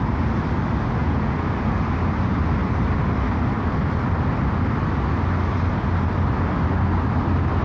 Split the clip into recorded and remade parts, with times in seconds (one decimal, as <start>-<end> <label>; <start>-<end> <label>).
0.0-1.0 recorded; 1.0-1.7 remade; 1.7-7.6 recorded